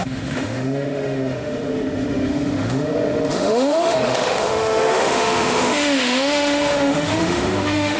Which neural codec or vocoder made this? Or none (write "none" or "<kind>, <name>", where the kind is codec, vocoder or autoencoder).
autoencoder, DAC-VAE